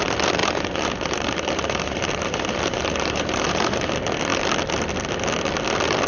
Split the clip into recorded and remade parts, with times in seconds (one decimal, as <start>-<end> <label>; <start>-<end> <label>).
0.0-0.4 recorded; 0.4-3.9 remade; 3.9-6.1 recorded